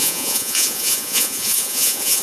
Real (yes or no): no